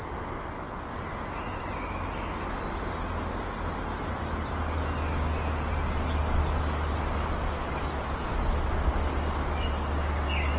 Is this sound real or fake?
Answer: real